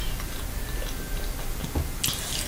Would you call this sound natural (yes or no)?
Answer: yes